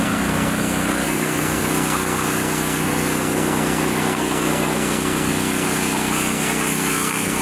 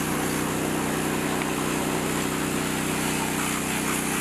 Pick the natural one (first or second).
second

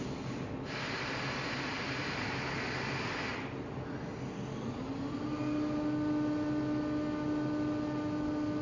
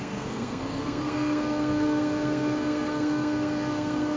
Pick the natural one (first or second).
first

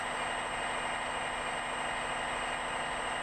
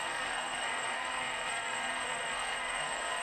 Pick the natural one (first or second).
first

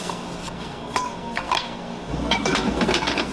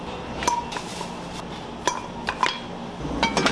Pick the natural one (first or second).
second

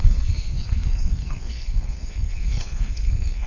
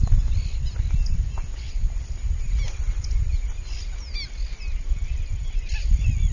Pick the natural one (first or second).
second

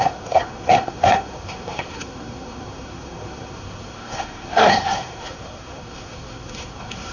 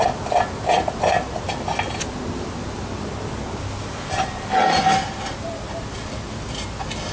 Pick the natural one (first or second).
second